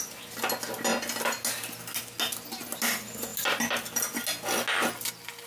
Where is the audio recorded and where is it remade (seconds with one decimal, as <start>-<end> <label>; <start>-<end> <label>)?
0.0-5.5 recorded